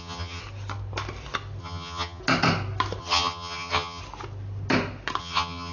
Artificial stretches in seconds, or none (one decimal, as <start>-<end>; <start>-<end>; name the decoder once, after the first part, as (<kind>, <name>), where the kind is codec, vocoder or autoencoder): 0.0-0.4 (vocoder, HiFi-GAN); 1.6-2.2; 3.0-4.0; 5.2-5.7